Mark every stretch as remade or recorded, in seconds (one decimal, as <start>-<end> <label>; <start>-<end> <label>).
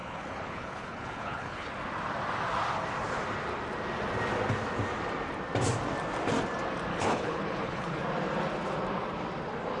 0.0-1.7 remade; 1.7-6.9 recorded; 6.9-8.0 remade; 8.0-9.8 recorded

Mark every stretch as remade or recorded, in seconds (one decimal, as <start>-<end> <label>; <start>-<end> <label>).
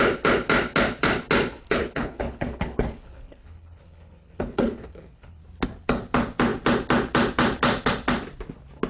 0.0-1.8 recorded; 1.8-5.4 remade; 5.4-8.9 recorded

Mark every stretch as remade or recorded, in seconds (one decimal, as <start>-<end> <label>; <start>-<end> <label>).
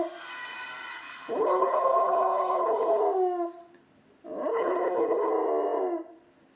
0.0-0.9 recorded; 0.9-3.0 remade; 3.0-4.5 recorded; 4.5-5.3 remade; 5.3-6.6 recorded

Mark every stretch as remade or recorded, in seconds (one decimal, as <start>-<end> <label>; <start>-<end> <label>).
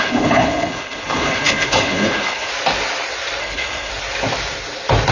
0.0-2.5 remade; 2.5-3.4 recorded; 3.4-3.9 remade; 3.9-5.1 recorded